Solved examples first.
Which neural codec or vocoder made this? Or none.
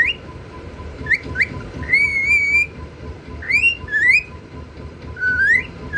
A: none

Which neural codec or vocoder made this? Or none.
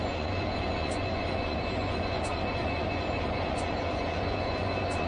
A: vocoder, Vocos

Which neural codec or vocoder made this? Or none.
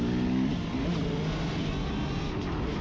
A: none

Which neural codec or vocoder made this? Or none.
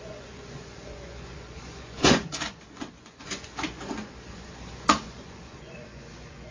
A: vocoder, Vocos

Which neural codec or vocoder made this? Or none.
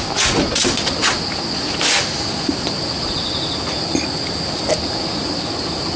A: none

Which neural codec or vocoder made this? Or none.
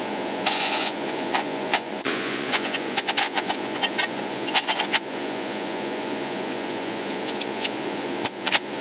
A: vocoder, Vocos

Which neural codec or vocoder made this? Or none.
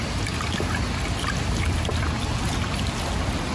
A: none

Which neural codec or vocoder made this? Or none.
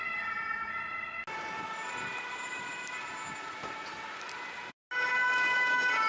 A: none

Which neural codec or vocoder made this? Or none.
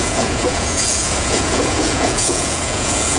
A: vocoder, Vocos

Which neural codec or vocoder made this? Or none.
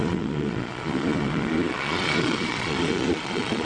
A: vocoder, Vocos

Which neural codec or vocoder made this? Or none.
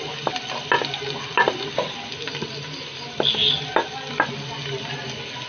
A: none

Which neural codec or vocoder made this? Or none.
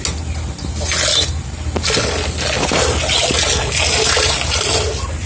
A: none